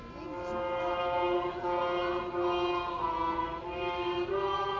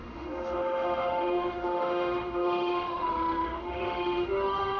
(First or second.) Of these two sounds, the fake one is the second